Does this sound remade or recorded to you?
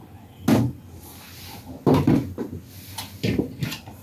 recorded